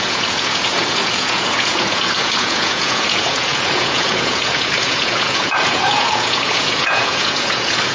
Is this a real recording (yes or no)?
no